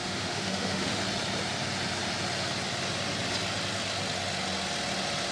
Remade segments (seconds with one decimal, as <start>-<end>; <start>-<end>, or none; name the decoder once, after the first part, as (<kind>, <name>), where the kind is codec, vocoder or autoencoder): 0.0-1.0 (autoencoder, DAC-VAE)